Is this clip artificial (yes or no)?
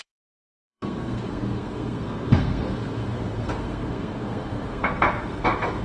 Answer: yes